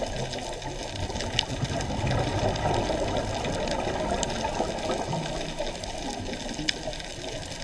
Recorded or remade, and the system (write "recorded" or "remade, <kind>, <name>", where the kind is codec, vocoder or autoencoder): recorded